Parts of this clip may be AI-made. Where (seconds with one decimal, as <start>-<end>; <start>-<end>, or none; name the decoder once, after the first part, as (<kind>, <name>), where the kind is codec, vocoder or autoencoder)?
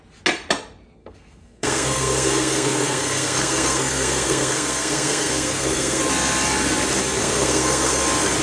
1.0-6.0 (codec, SNAC); 7.2-8.0